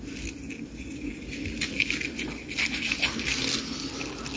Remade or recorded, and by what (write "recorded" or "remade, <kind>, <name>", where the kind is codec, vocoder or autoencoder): recorded